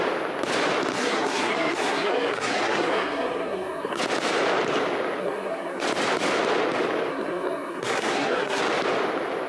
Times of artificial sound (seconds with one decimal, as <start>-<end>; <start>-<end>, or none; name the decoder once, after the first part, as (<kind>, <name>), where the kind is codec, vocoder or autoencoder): 0.9-4.0 (codec, SNAC); 5.2-5.8; 7.1-8.6